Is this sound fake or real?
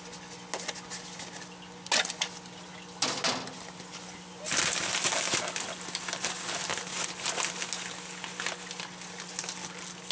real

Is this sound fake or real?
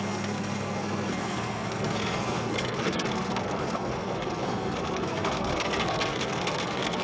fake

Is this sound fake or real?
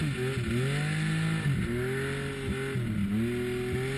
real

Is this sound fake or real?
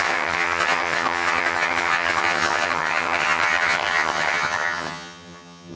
fake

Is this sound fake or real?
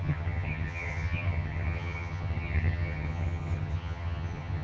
fake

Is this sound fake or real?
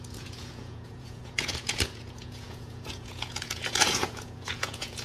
fake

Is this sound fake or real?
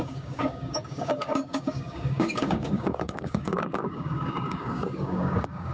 fake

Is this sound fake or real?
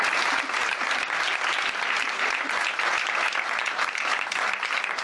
real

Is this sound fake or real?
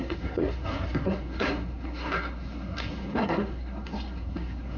fake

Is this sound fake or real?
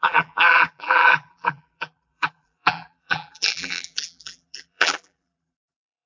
fake